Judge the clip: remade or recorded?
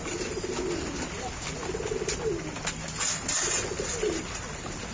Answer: recorded